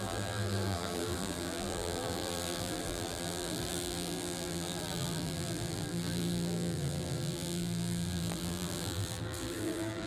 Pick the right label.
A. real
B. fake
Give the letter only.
B